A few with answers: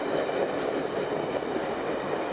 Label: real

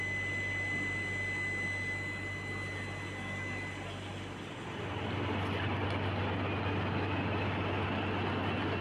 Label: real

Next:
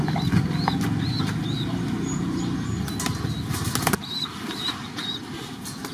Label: real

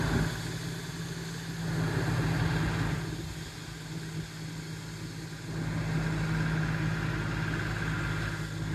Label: real